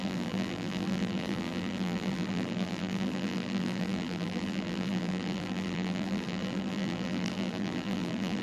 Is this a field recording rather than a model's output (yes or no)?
no